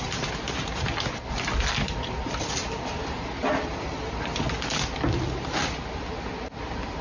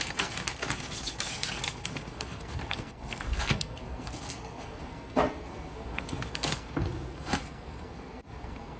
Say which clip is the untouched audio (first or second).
first